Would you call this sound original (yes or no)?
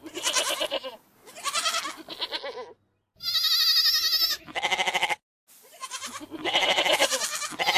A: yes